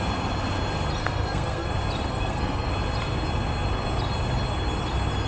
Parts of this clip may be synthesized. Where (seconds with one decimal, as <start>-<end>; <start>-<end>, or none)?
1.0-1.7; 2.1-2.7